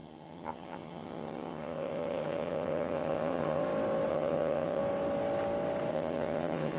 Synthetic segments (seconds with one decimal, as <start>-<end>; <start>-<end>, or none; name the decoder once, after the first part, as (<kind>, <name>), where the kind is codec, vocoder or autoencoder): 0.0-3.6 (vocoder, HiFi-GAN); 4.1-4.8; 5.9-6.8